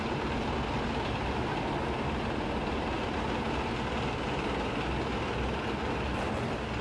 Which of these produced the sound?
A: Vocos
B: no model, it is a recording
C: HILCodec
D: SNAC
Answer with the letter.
B